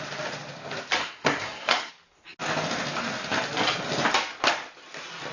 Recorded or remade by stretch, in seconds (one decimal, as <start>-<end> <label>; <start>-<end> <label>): 0.0-1.0 recorded; 1.0-1.9 remade; 1.9-5.3 recorded